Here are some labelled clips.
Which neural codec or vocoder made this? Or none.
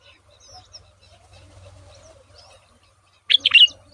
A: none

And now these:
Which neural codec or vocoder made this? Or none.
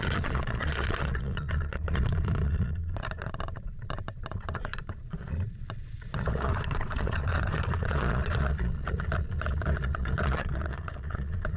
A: vocoder, Vocos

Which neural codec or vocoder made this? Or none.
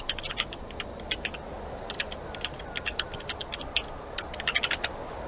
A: none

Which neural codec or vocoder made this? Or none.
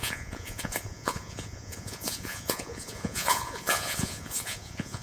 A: vocoder, Vocos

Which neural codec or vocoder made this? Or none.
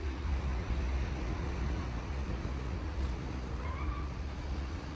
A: vocoder, Vocos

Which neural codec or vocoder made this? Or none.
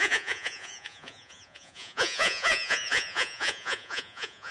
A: vocoder, Vocos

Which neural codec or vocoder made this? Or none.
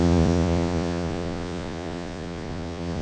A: vocoder, Vocos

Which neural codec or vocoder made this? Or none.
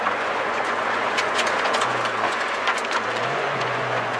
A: vocoder, Vocos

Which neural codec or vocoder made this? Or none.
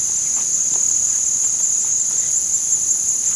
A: none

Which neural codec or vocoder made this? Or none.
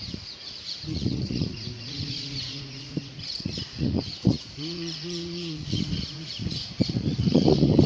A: vocoder, Vocos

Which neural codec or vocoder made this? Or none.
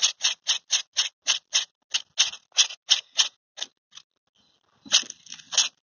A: none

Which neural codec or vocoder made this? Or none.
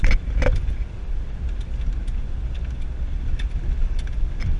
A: none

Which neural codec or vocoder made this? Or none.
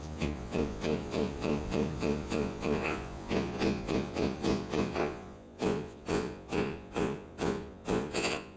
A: vocoder, Vocos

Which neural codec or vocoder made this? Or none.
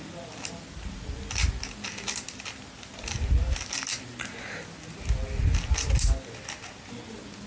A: none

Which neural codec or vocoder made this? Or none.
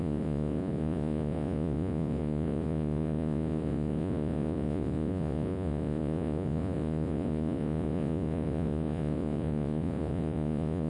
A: vocoder, Vocos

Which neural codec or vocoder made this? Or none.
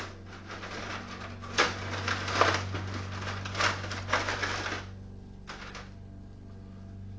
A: none